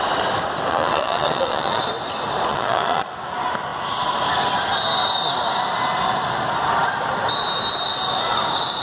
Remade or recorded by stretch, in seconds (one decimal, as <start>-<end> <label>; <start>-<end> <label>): 0.0-0.7 recorded; 0.7-1.8 remade; 1.8-2.5 recorded; 2.5-3.1 remade; 3.1-8.8 recorded